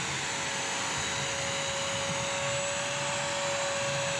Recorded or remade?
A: recorded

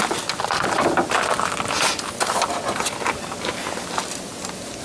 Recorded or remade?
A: recorded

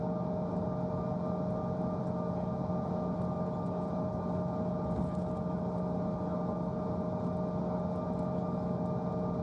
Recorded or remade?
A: recorded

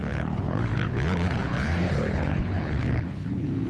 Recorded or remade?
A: remade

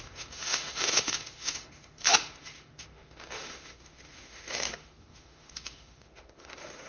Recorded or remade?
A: remade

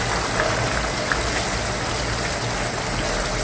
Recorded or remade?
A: recorded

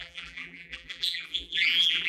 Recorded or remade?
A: remade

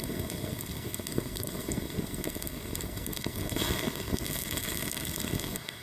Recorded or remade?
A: remade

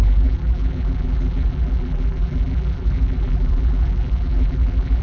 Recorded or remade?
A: remade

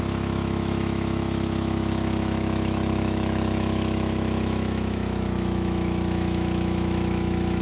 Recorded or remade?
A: remade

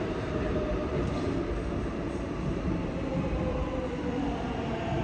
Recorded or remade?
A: remade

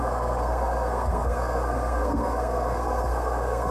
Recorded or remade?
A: remade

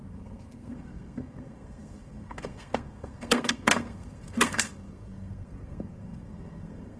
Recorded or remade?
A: remade